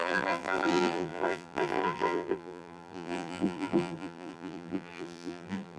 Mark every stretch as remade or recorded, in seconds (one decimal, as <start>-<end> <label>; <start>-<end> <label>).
0.0-5.8 remade